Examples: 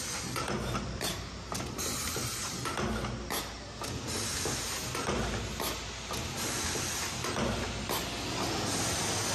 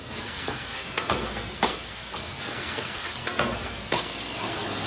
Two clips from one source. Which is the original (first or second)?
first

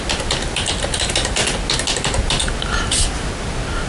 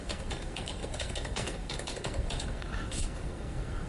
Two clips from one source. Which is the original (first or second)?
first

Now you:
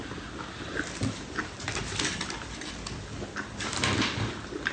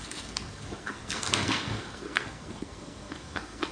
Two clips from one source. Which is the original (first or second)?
first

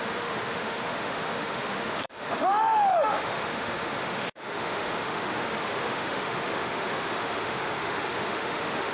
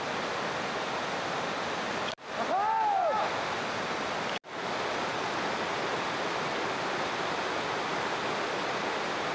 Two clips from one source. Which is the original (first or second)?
second